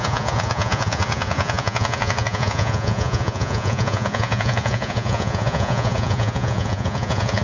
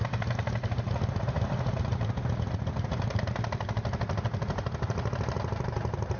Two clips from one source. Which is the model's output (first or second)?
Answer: first